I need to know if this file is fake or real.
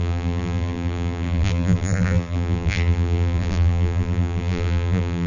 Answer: fake